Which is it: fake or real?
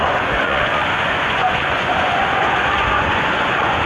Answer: fake